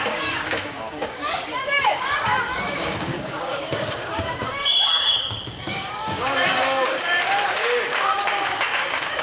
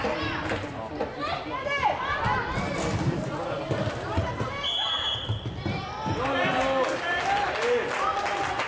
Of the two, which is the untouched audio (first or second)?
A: second